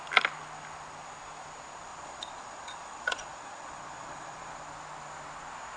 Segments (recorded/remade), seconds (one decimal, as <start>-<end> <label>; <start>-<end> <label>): 0.0-1.9 recorded; 1.9-4.5 remade; 4.5-5.8 recorded